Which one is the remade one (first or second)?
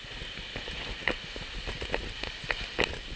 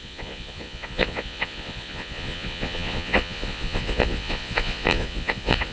second